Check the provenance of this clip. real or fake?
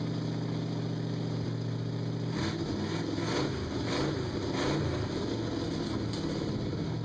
real